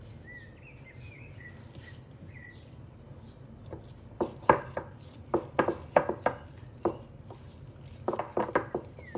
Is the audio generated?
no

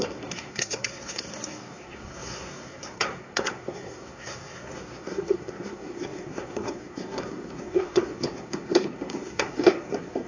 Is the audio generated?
yes